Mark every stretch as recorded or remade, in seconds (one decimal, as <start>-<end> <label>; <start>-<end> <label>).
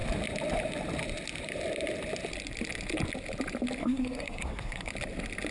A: 0.0-3.8 recorded; 3.8-4.9 remade; 4.9-5.5 recorded